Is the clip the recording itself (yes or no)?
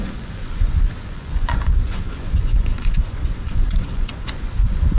no